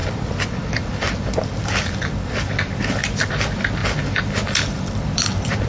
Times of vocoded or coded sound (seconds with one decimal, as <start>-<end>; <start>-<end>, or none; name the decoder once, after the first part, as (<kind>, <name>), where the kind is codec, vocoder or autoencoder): 0.0-3.3 (vocoder, BigVGAN v2); 3.8-5.7